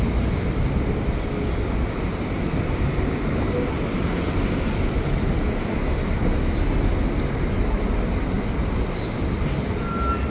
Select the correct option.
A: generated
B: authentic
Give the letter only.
B